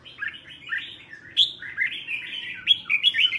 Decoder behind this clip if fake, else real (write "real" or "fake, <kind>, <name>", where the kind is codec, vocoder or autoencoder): real